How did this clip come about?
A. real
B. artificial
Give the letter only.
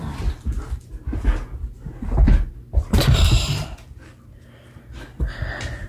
A